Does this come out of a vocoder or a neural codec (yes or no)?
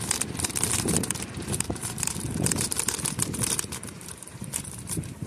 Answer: yes